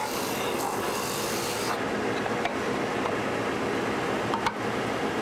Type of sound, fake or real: real